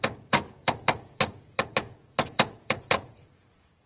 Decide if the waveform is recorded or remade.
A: remade